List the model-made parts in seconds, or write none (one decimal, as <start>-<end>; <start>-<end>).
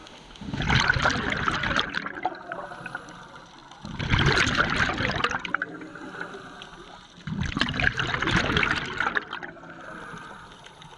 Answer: 0.0-0.6